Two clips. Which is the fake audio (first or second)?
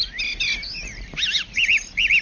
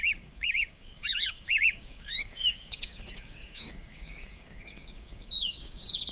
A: second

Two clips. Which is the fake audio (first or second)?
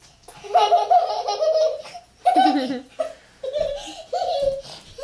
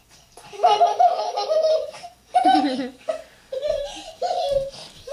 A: second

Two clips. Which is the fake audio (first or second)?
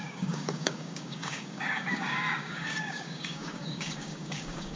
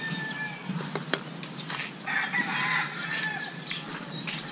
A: first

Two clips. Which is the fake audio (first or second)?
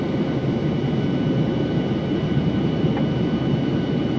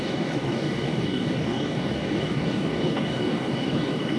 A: second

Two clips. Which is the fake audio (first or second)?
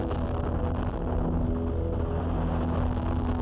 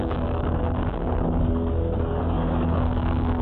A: second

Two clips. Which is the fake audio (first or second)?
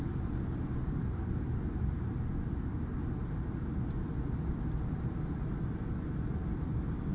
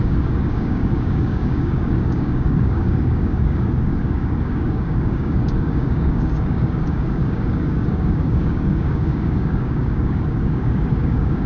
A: second